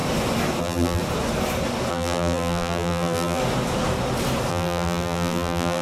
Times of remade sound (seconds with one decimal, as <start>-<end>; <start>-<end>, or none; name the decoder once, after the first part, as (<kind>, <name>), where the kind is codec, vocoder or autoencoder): 0.6-1.0 (vocoder, BigVGAN v2); 1.9-3.4; 4.5-5.8